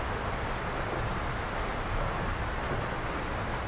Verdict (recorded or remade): recorded